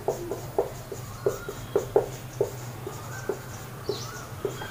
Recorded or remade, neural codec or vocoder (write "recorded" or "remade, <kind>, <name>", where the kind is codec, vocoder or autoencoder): remade, vocoder, BigVGAN v2